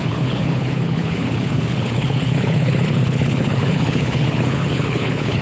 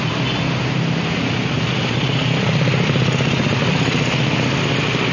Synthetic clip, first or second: first